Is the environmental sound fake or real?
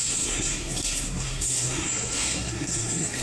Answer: fake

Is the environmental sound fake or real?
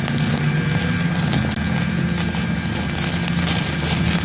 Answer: real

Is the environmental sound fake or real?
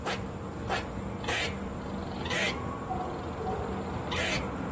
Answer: real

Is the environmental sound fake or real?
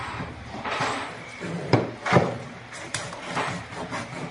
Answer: fake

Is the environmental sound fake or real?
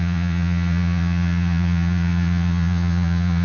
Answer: fake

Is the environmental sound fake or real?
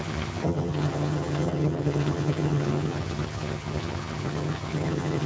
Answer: fake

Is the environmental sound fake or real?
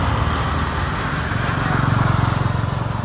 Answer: real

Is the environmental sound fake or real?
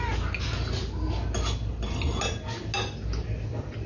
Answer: real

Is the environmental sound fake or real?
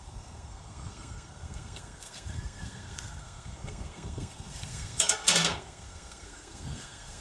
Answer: fake